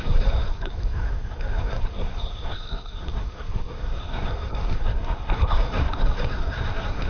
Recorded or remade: remade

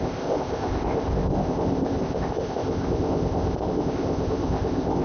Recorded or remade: remade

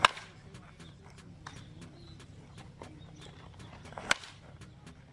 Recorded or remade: recorded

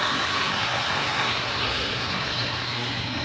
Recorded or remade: remade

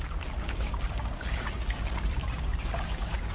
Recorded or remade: remade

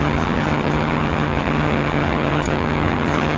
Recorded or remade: remade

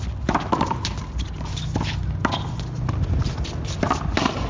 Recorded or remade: recorded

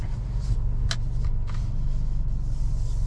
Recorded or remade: recorded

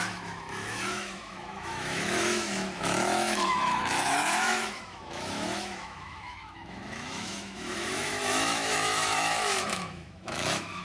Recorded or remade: remade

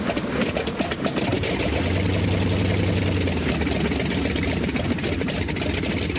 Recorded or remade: recorded